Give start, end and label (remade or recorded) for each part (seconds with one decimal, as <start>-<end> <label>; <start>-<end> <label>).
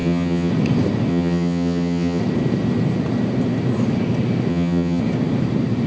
0.0-0.5 remade; 0.5-1.1 recorded; 1.1-2.2 remade; 2.2-4.5 recorded; 4.5-5.0 remade; 5.0-5.9 recorded